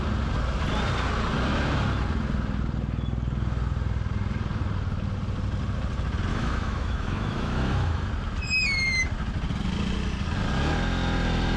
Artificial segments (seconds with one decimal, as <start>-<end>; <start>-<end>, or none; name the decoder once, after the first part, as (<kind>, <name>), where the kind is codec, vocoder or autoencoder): 6.3-8.1 (autoencoder, DAC-VAE)